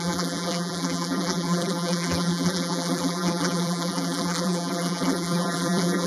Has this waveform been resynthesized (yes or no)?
yes